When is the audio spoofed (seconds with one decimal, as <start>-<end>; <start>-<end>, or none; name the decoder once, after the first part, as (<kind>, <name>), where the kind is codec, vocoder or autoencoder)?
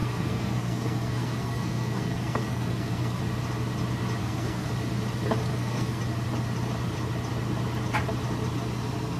0.0-3.2 (codec, SNAC); 4.2-4.7; 5.5-6.0